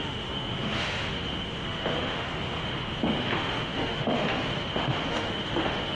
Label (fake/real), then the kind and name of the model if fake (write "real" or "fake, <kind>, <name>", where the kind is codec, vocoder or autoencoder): fake, autoencoder, DAC-VAE